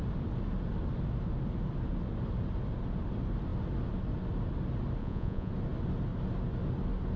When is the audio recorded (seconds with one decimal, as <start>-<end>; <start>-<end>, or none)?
0.0-5.0; 5.5-7.2